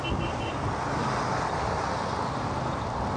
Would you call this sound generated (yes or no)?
no